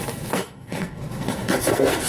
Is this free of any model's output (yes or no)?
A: no